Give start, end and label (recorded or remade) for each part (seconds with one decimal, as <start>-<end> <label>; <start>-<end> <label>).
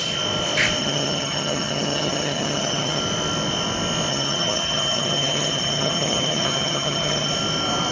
0.0-0.8 recorded; 0.8-3.0 remade; 3.0-4.1 recorded; 4.1-7.3 remade; 7.3-7.9 recorded